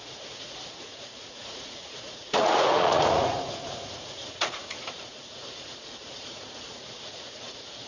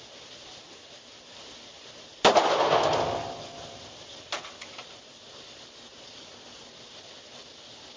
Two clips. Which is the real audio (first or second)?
second